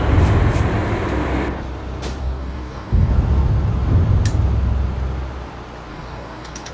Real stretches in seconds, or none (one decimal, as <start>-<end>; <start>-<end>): 0.0-2.2; 3.1-5.9